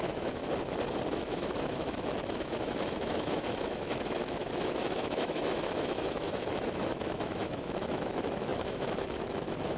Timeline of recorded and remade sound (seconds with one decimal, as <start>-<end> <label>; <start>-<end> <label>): 0.0-0.4 remade; 0.4-1.1 recorded; 1.1-9.8 remade